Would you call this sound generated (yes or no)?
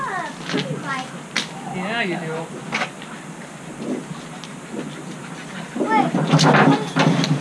no